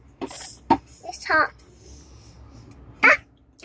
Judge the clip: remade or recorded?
recorded